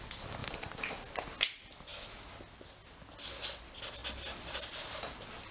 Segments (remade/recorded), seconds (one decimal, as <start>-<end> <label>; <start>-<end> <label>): 0.0-5.5 recorded